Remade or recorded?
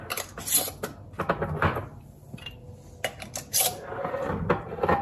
recorded